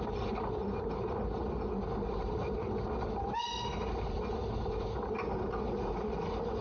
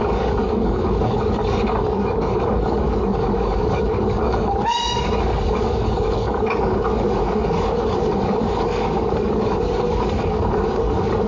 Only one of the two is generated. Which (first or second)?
second